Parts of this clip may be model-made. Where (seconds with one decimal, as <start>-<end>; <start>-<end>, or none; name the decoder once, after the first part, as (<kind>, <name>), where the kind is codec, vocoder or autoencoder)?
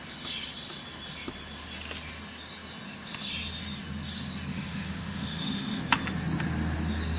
4.5-5.8 (autoencoder, DAC-VAE)